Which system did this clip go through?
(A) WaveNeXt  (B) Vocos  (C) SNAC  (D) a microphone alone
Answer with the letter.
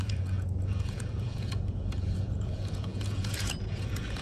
B